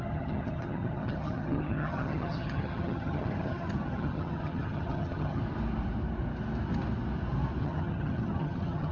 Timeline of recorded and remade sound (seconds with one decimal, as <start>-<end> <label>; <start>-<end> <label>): 0.0-5.4 remade; 5.4-7.6 recorded; 7.6-8.9 remade